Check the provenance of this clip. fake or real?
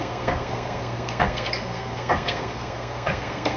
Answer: fake